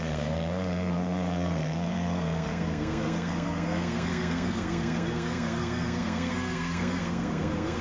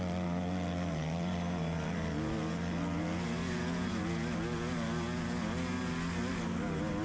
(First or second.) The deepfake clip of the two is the first